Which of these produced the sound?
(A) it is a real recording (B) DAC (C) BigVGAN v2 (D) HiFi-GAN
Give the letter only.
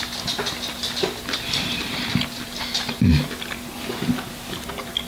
A